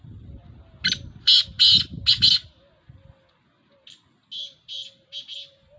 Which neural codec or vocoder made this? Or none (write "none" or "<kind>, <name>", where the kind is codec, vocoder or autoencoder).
none